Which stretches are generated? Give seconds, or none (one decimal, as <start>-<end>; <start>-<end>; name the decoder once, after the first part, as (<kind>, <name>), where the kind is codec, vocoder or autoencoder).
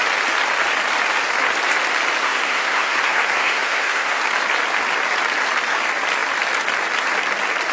2.2-4.2 (codec, SNAC)